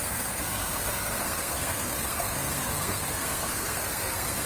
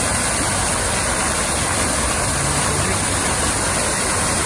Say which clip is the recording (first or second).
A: second